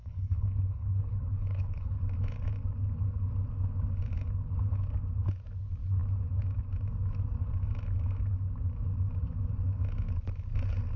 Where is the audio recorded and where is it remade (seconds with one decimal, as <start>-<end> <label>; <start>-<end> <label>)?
0.0-2.0 remade; 2.0-11.0 recorded